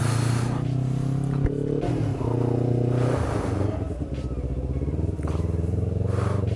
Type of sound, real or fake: real